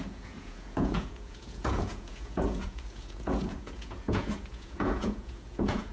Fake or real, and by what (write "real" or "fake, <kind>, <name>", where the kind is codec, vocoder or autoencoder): fake, vocoder, Vocos